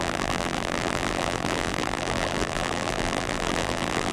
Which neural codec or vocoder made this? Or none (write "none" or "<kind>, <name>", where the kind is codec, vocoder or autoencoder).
vocoder, BigVGAN v2